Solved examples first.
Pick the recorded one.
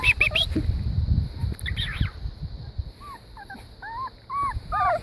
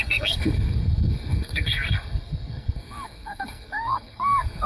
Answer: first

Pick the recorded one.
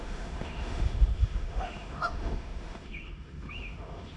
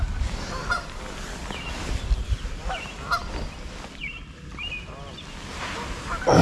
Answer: second